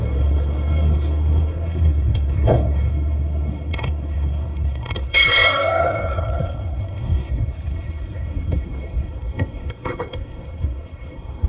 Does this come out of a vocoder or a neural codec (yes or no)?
yes